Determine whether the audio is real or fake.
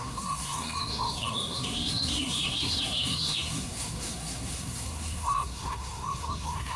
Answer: fake